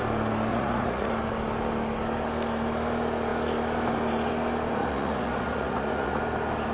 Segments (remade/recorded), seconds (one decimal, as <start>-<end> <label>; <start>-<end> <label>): 0.0-0.5 recorded; 0.5-1.1 remade; 1.1-4.8 recorded; 4.8-6.2 remade; 6.2-6.7 recorded